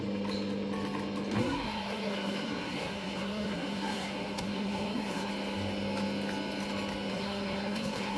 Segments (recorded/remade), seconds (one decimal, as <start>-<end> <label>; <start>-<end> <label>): 0.0-1.4 recorded; 1.4-5.3 remade; 5.3-7.1 recorded; 7.1-8.2 remade